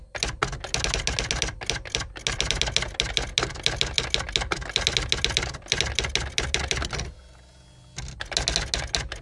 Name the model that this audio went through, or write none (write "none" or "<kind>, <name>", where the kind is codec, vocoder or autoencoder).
none